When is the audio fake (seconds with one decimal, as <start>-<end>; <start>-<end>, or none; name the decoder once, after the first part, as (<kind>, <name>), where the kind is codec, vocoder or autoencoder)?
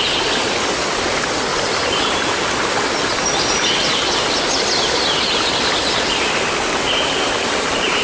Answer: none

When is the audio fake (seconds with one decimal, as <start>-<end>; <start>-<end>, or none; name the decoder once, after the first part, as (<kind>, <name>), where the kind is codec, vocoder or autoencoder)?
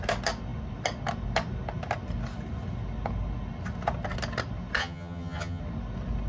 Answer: 4.8-5.6 (vocoder, HiFi-GAN)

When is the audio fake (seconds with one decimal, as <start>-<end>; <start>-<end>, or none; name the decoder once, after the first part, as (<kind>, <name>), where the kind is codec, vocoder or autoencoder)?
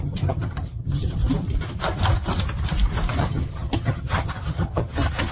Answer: 0.0-1.2 (vocoder, HiFi-GAN); 3.2-5.3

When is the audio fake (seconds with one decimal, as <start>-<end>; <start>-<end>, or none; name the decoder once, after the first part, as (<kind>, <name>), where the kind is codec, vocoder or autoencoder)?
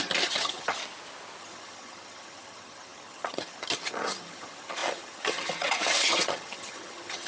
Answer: 0.0-0.8 (vocoder, HiFi-GAN); 1.4-7.3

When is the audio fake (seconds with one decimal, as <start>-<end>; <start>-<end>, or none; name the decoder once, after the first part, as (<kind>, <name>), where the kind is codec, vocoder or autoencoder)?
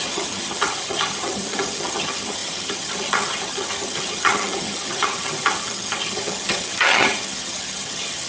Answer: 0.0-8.3 (vocoder, HiFi-GAN)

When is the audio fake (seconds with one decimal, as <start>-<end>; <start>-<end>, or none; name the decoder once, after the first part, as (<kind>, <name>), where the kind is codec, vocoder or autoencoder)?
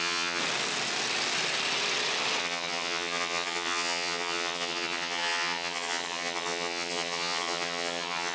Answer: 0.0-0.4 (vocoder, HiFi-GAN); 2.4-8.3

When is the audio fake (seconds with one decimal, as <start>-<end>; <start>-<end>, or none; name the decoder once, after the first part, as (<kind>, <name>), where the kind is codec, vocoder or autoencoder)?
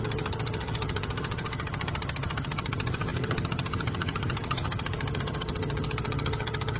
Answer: 0.0-6.8 (vocoder, HiFi-GAN)